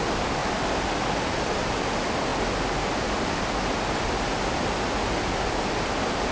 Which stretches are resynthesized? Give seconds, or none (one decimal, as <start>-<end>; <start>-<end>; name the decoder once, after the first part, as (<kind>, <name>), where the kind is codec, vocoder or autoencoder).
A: none